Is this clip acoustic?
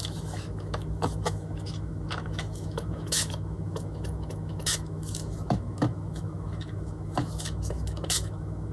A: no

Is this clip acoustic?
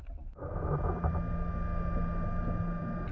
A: yes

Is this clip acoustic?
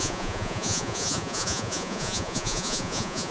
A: no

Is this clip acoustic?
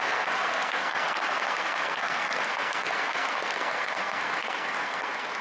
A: no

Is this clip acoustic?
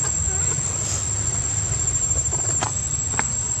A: yes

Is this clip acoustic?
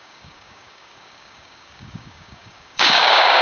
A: no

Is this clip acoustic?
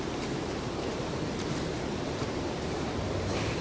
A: no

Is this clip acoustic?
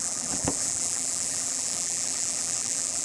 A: no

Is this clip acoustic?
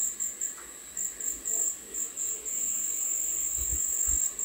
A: no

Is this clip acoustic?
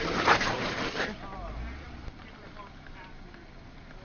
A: yes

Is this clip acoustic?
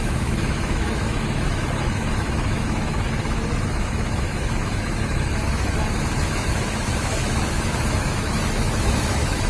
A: no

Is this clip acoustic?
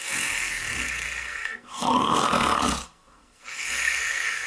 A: no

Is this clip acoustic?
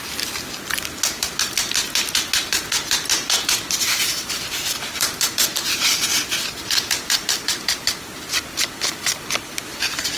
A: yes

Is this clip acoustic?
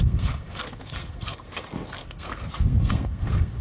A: no